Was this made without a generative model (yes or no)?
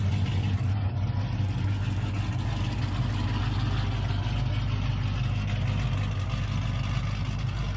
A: yes